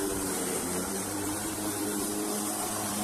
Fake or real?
fake